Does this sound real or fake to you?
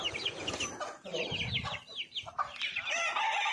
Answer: real